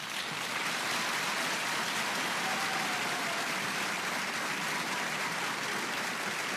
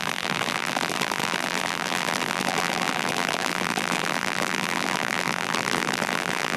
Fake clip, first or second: second